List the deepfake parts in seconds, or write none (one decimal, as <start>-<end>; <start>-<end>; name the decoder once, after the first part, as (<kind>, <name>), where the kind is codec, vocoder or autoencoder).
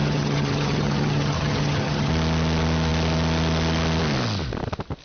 0.0-2.1 (vocoder, HiFi-GAN)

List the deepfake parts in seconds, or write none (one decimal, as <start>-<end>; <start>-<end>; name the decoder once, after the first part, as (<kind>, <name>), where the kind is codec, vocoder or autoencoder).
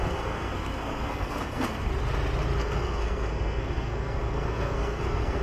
0.0-1.9 (codec, SNAC); 2.6-5.4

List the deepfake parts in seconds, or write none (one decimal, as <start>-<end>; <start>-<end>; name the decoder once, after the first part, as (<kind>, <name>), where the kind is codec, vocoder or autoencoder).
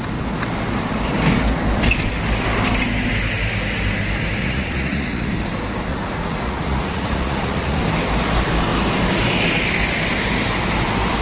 4.4-5.3 (vocoder, Vocos); 5.9-7.8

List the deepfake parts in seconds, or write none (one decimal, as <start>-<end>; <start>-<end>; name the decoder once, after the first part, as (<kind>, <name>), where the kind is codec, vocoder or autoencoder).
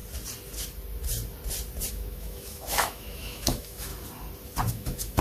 1.9-3.9 (autoencoder, DAC-VAE); 4.7-5.2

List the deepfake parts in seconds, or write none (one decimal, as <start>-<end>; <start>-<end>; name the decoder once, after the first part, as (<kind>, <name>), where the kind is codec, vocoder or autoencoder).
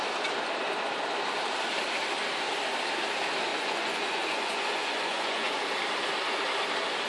3.5-5.6 (vocoder, Vocos)